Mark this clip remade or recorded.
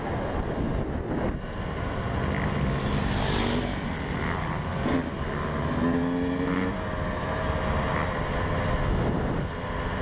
recorded